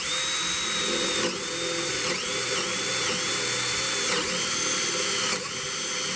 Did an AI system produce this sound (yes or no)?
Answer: no